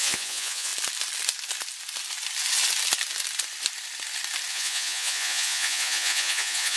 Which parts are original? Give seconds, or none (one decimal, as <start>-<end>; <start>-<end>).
0.7-4.5